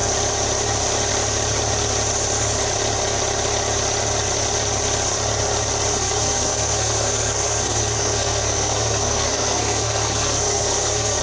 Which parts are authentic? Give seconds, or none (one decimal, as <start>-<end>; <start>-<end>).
0.0-5.9